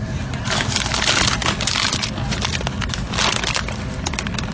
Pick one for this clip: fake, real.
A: real